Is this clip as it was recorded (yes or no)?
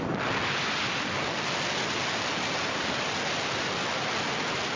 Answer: yes